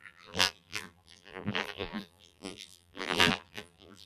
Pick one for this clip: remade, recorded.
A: remade